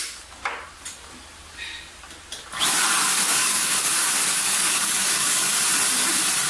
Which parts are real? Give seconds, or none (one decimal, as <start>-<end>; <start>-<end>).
0.4-3.0; 5.5-6.5